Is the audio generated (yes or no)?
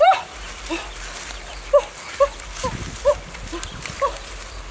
no